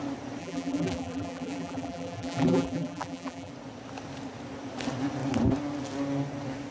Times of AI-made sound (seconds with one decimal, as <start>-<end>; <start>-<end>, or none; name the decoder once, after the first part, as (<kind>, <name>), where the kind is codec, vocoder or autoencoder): 0.4-3.5 (vocoder, BigVGAN v2)